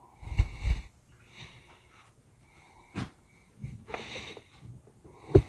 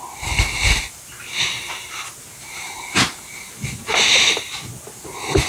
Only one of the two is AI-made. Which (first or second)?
second